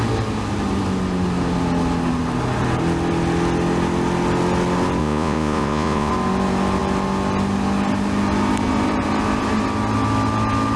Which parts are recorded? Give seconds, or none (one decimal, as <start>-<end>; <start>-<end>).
0.0-5.0; 6.1-10.8